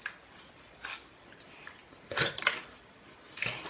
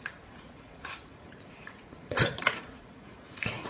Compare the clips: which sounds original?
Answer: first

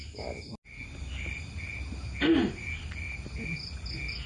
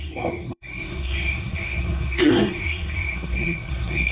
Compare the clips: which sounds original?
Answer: first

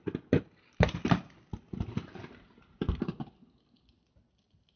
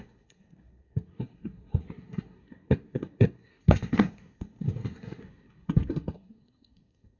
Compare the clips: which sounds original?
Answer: first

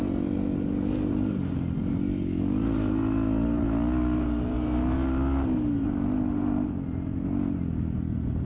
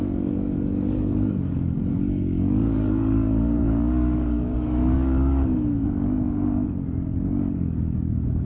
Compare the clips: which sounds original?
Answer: first